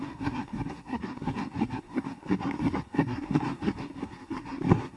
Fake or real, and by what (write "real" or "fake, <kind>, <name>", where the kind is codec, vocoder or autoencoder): fake, codec, SNAC